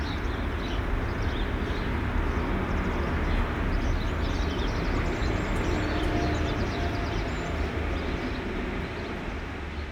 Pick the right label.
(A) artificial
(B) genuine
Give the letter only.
B